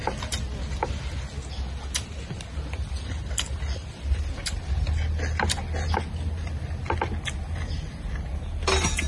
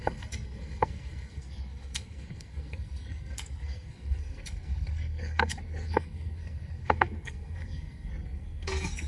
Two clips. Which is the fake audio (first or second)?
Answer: second